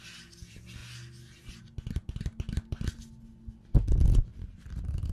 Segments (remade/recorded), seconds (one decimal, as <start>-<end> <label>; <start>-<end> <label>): 0.0-4.3 recorded; 4.3-5.1 remade